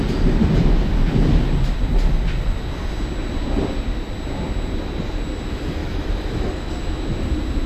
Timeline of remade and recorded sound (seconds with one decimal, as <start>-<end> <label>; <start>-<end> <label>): 0.0-5.8 recorded; 5.8-6.7 remade; 6.7-7.7 recorded